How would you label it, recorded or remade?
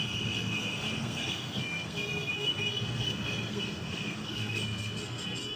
remade